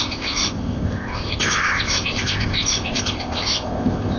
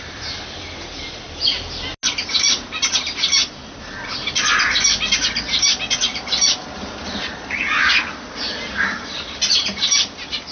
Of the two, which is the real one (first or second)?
second